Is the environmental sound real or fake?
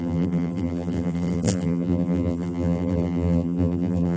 fake